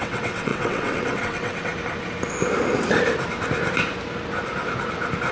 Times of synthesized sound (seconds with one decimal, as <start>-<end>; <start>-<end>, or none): 0.0-1.7